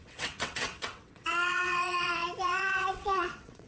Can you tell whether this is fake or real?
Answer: fake